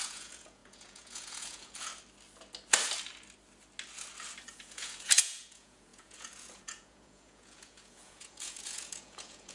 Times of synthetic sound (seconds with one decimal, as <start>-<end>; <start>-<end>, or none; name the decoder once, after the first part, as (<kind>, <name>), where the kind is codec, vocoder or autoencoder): 0.0-1.9 (vocoder, Vocos); 4.5-9.5